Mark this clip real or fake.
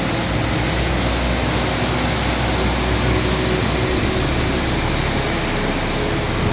real